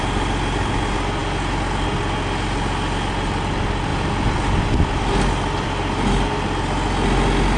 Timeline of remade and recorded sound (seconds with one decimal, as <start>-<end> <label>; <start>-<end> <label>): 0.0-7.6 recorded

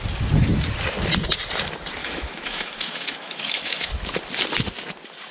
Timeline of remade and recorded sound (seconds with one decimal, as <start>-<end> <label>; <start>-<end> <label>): 0.0-2.0 recorded; 2.0-3.9 remade; 3.9-5.3 recorded

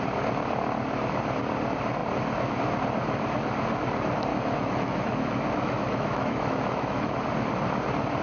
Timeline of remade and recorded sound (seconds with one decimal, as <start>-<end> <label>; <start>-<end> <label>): 0.0-4.3 recorded; 4.3-7.1 remade; 7.1-8.2 recorded

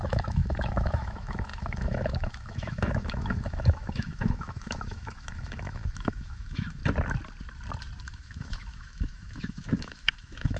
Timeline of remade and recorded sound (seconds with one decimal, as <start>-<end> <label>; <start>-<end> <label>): 0.0-6.8 remade; 6.8-8.0 recorded; 8.0-10.6 remade

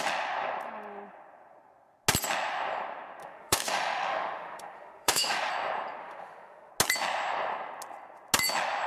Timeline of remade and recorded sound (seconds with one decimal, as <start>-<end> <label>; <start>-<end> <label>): 0.0-3.2 recorded; 3.2-5.5 remade; 5.5-6.0 recorded; 6.0-6.7 remade; 6.7-8.9 recorded

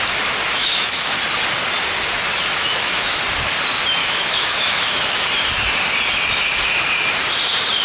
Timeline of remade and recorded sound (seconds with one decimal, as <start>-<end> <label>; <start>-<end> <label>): 0.0-0.6 recorded; 0.6-1.2 remade; 1.2-2.6 recorded; 2.6-3.2 remade; 3.2-4.0 recorded; 4.0-5.3 remade; 5.3-7.8 recorded